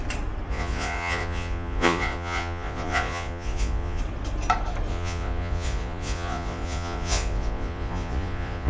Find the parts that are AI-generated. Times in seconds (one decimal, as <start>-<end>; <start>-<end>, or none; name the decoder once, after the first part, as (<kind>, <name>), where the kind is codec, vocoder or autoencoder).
0.5-4.0 (vocoder, Vocos); 4.9-8.7